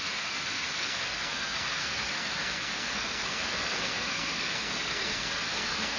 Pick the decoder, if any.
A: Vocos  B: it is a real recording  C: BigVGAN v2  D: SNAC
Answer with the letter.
D